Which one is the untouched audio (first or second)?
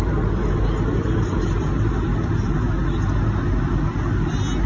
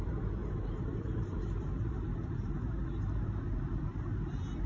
first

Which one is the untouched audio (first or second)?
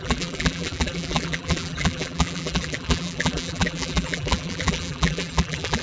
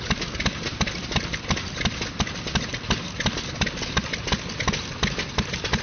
second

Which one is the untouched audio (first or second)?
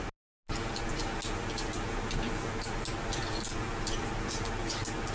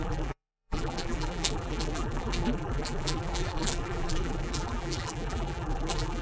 first